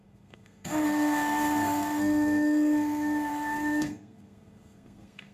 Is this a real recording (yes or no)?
no